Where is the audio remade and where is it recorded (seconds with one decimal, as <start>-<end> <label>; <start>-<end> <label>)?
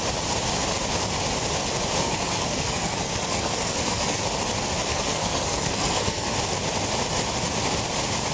0.0-2.0 recorded; 2.0-4.2 remade; 4.2-4.9 recorded; 4.9-6.3 remade; 6.3-8.3 recorded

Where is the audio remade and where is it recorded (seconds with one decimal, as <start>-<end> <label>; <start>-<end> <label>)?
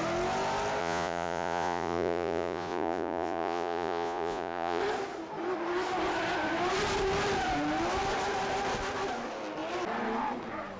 0.0-0.8 recorded; 0.8-4.8 remade; 4.8-10.8 recorded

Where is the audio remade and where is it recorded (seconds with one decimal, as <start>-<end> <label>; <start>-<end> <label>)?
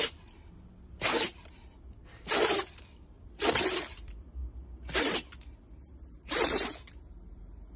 0.0-4.4 remade; 4.4-5.0 recorded; 5.0-7.8 remade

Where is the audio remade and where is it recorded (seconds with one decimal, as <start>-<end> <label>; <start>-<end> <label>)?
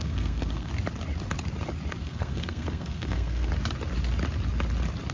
0.0-0.7 remade; 0.7-2.0 recorded; 2.0-3.5 remade; 3.5-5.1 recorded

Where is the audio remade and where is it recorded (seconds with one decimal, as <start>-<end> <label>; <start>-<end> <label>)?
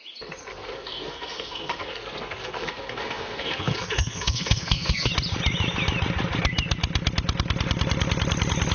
0.0-0.5 recorded; 0.5-5.1 remade; 5.1-8.7 recorded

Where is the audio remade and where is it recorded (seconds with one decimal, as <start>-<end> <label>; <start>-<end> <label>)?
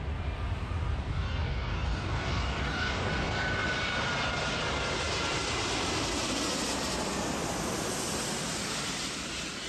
0.0-1.1 recorded; 1.1-3.1 remade; 3.1-9.7 recorded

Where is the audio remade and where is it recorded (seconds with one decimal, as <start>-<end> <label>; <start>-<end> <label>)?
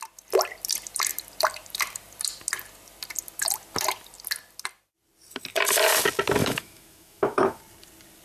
0.0-6.4 recorded; 6.4-7.6 remade; 7.6-8.2 recorded